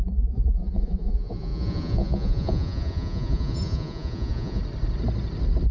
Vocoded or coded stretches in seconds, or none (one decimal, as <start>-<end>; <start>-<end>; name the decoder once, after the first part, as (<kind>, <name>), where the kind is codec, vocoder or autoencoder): 0.0-4.6 (vocoder, Vocos)